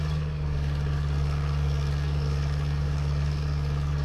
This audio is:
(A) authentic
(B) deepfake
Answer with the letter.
B